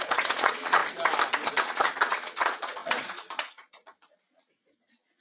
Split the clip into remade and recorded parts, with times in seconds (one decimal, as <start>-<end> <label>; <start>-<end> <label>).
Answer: 0.0-0.8 remade; 0.8-1.5 recorded; 1.5-5.2 remade